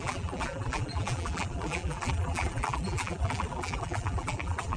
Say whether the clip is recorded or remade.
remade